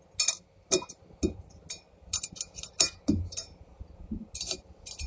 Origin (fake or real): real